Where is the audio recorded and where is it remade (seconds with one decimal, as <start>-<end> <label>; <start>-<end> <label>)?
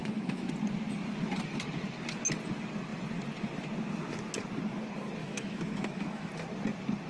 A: 0.0-0.5 remade; 0.5-5.2 recorded; 5.2-6.3 remade; 6.3-7.1 recorded